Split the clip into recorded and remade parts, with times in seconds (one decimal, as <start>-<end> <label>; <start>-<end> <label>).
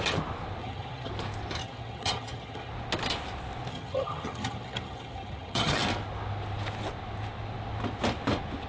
0.0-0.6 recorded; 0.6-1.1 remade; 1.1-1.6 recorded; 1.6-2.7 remade; 2.7-3.7 recorded; 3.7-5.8 remade; 5.8-8.7 recorded